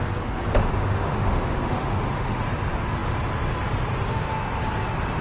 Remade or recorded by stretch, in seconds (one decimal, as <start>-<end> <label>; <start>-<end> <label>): 0.0-0.5 recorded; 0.5-2.4 remade; 2.4-5.2 recorded